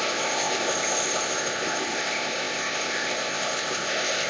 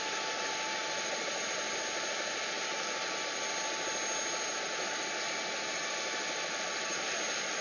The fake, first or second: first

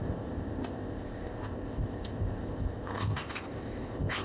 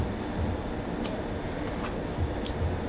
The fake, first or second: first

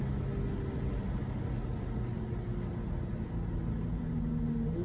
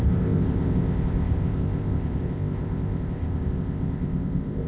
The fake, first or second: second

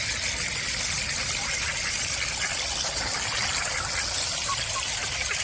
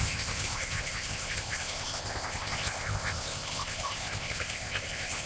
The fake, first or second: second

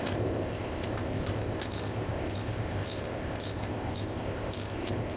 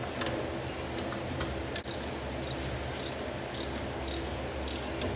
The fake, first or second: first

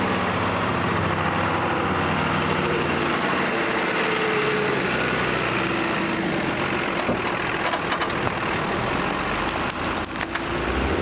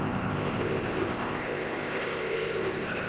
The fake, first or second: second